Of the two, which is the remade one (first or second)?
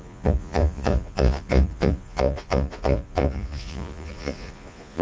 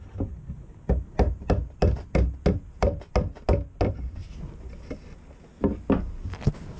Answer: first